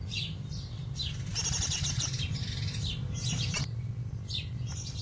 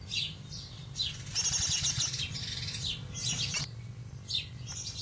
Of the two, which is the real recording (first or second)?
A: second